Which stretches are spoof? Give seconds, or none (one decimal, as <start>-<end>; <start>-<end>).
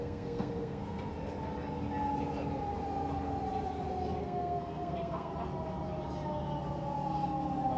0.0-1.1; 4.2-5.3